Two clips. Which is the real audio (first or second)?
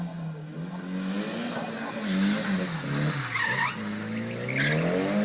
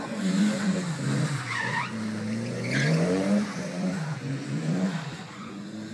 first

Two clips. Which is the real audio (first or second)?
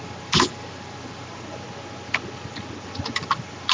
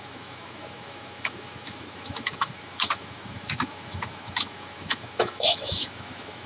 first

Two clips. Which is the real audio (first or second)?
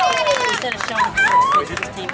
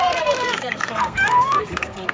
first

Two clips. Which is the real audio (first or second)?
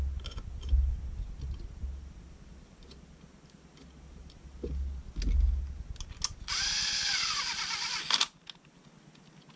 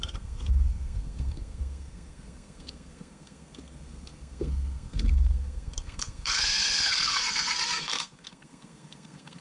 first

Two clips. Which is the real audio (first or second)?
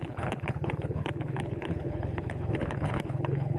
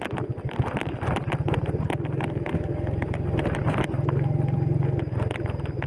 second